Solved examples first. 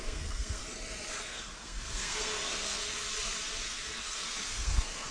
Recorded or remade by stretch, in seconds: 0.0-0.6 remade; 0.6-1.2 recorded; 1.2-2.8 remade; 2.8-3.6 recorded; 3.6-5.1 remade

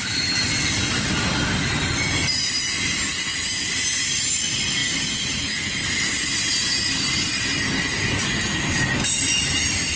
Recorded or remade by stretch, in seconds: 0.0-10.0 recorded

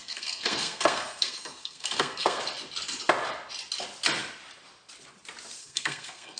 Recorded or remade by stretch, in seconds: 0.0-2.4 remade; 2.4-5.6 recorded; 5.6-6.4 remade

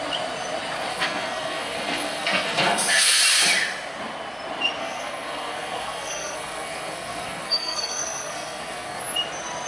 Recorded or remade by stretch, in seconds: 0.0-0.9 recorded; 0.9-3.2 remade; 3.2-4.8 recorded; 4.8-9.0 remade; 9.0-9.7 recorded

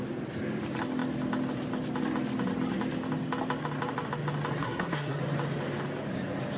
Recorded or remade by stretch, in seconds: 0.0-4.6 recorded; 4.6-5.2 remade; 5.2-6.6 recorded

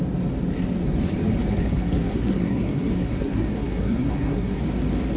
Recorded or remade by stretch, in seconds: 0.0-1.5 recorded; 1.5-4.6 remade; 4.6-5.2 recorded

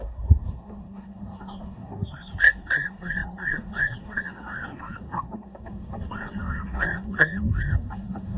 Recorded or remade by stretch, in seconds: 0.0-8.4 remade

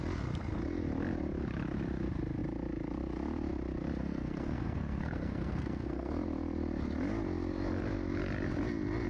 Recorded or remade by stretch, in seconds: 0.0-4.0 recorded; 4.0-6.1 remade; 6.1-9.1 recorded